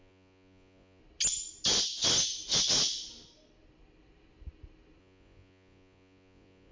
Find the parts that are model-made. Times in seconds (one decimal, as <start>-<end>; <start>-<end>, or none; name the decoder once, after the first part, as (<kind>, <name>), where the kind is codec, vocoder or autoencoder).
0.0-1.0 (vocoder, Vocos); 5.0-6.7